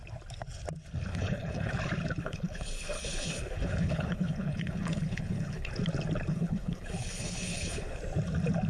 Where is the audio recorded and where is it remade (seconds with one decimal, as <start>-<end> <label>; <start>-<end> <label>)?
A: 0.0-1.1 recorded; 1.1-1.8 remade; 1.8-2.2 recorded; 2.2-5.7 remade; 5.7-6.3 recorded; 6.3-8.0 remade; 8.0-8.7 recorded